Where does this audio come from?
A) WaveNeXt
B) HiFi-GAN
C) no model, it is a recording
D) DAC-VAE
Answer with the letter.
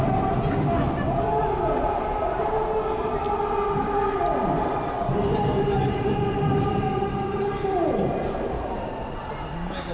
C